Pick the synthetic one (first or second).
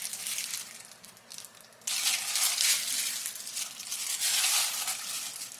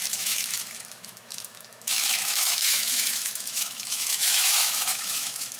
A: second